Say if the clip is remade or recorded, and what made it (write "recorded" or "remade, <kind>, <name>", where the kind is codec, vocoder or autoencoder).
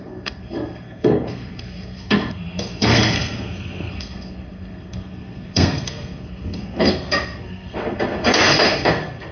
remade, codec, SNAC